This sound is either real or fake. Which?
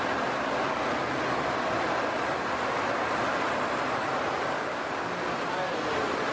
real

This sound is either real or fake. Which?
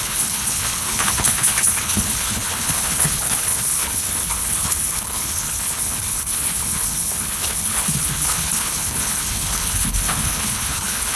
fake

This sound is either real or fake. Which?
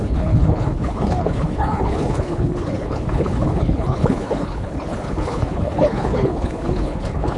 fake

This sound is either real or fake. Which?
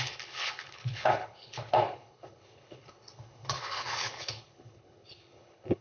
fake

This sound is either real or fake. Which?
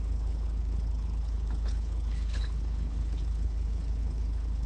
fake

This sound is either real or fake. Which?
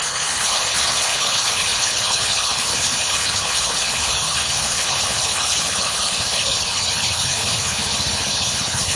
fake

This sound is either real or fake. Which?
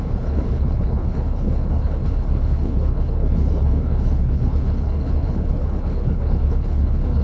fake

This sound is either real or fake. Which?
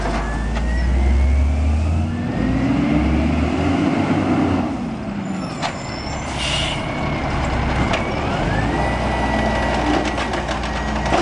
real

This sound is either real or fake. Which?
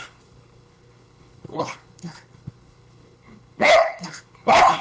fake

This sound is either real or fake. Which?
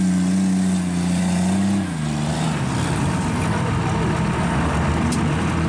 real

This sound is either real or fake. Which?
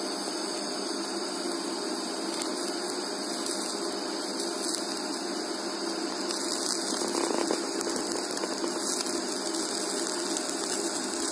real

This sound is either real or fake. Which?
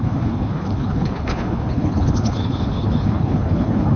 fake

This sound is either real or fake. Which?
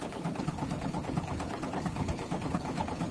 fake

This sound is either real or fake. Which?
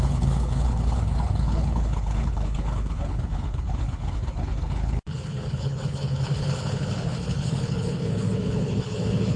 fake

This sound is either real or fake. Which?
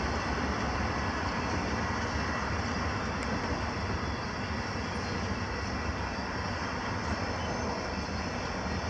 real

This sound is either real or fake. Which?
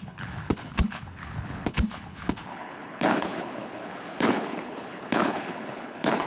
fake